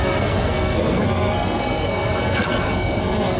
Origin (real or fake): fake